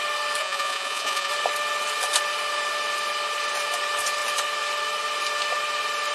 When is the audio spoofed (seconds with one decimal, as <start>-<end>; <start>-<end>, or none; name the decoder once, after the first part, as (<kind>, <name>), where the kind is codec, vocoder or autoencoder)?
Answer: 0.4-1.3 (vocoder, Vocos)